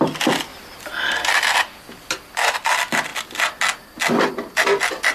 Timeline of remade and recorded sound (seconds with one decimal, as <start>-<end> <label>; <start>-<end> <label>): 0.0-5.1 recorded